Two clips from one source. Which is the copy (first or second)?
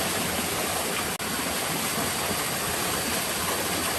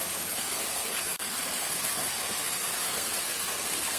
second